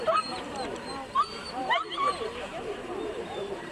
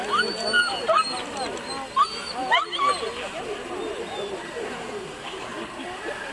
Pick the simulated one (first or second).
first